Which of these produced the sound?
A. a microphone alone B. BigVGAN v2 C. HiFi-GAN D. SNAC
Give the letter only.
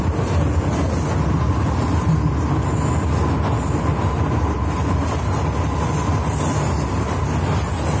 A